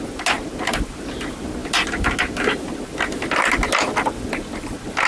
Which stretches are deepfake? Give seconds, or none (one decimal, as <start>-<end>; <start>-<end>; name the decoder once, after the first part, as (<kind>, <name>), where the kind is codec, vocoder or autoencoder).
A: none